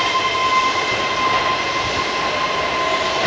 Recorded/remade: recorded